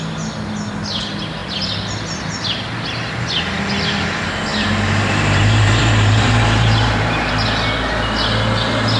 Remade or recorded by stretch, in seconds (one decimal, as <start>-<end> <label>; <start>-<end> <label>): 0.0-4.5 recorded; 4.5-7.3 remade; 7.3-9.0 recorded